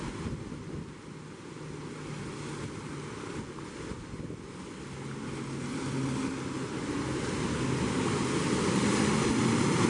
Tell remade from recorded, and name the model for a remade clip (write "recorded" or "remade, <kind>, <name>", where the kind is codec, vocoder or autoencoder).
recorded